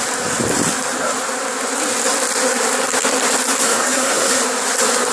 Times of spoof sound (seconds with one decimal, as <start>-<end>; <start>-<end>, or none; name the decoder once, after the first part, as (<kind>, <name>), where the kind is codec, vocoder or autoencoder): 3.6-4.4 (codec, SNAC)